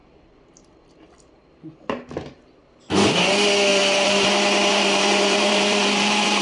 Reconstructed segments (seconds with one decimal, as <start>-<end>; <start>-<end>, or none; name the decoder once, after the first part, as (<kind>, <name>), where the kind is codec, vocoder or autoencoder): 3.7-4.3 (vocoder, BigVGAN v2); 4.7-6.4